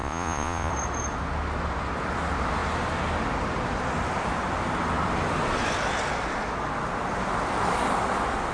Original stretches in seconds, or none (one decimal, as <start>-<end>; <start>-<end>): 0.7-8.5